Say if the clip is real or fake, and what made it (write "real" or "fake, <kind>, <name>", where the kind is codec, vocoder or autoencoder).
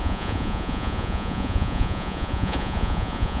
fake, vocoder, Vocos